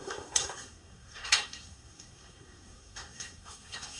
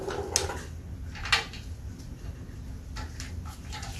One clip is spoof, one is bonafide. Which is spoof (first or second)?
first